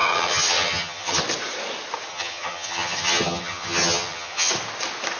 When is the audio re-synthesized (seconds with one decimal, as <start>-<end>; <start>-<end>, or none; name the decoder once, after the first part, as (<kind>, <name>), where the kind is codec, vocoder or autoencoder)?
0.0-1.2 (vocoder, HiFi-GAN); 2.1-4.5